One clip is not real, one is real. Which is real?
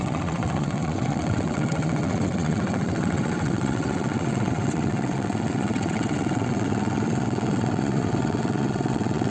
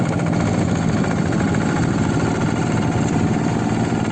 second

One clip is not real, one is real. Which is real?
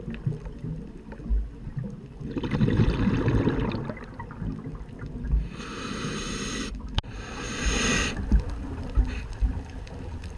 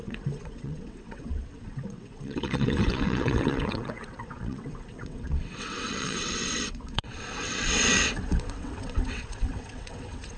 first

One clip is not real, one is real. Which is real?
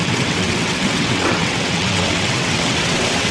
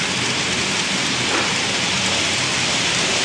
second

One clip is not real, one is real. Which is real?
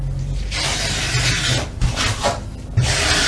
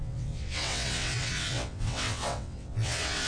first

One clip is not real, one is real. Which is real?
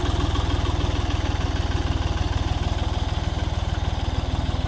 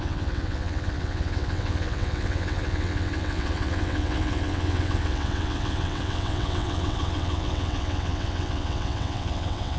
first